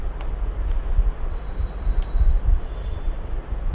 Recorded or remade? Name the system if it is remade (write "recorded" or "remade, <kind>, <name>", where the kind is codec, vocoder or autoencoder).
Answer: recorded